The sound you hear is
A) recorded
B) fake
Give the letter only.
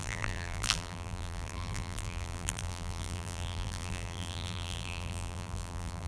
B